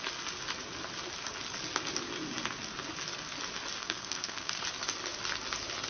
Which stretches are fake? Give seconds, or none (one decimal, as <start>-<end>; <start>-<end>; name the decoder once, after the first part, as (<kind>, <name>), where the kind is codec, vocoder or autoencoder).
3.8-4.6 (codec, SNAC)